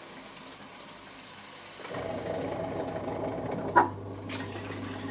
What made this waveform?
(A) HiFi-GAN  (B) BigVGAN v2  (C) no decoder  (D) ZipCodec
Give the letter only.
C